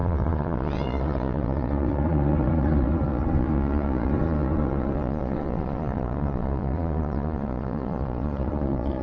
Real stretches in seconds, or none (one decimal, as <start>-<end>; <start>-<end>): none

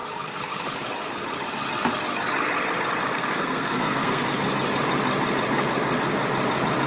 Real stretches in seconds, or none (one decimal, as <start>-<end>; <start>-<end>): 0.0-3.1; 4.2-6.9

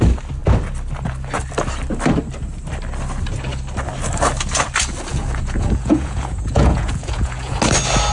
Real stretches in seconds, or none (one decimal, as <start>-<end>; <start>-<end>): 0.0-5.1; 7.6-8.1

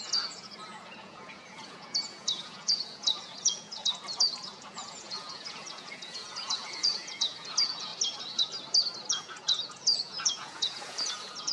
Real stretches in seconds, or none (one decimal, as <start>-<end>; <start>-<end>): 0.5-1.0; 7.9-9.1

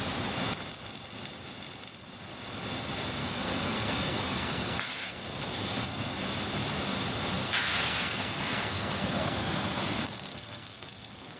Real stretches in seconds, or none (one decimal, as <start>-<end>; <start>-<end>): 0.0-3.2; 6.2-7.4

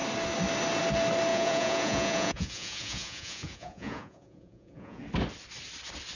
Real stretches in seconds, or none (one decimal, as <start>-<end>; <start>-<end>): 0.0-1.3; 5.0-6.2

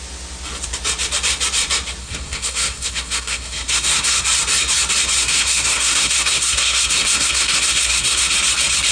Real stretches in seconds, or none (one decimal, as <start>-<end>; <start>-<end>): 0.0-2.0; 4.2-5.2; 8.3-8.9

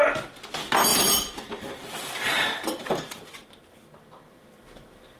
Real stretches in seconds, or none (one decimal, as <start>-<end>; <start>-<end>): 0.0-0.9; 3.2-5.2